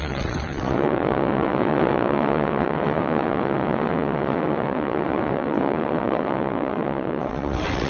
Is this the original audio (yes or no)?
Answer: no